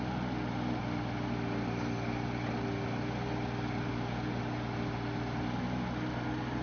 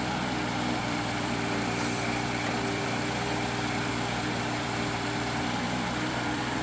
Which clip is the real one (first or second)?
first